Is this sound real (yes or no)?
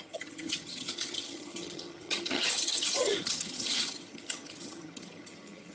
no